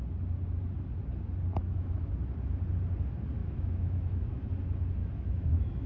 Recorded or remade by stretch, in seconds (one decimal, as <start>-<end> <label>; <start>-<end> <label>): 0.0-1.6 recorded; 1.6-2.1 remade; 2.1-3.4 recorded; 3.4-4.4 remade; 4.4-5.0 recorded; 5.0-5.9 remade